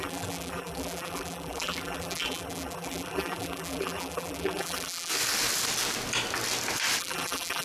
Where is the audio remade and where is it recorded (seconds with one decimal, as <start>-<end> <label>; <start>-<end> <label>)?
0.0-5.1 remade; 5.1-7.0 recorded; 7.0-7.6 remade